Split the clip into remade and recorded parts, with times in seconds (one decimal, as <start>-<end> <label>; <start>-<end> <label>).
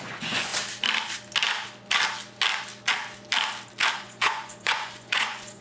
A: 0.0-0.5 remade; 0.5-3.9 recorded; 3.9-5.6 remade